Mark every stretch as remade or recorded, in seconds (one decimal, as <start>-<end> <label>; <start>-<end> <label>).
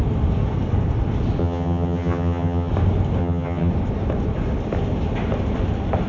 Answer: 0.0-1.4 recorded; 1.4-2.7 remade; 2.7-3.2 recorded; 3.2-3.7 remade; 3.7-6.1 recorded